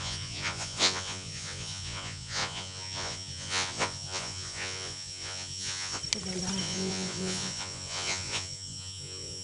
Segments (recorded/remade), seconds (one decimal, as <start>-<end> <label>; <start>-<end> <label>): 0.0-6.0 remade; 6.0-6.6 recorded; 6.6-9.4 remade